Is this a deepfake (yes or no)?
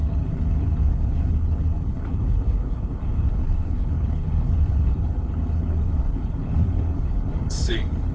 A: yes